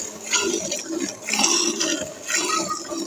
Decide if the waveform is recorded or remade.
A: recorded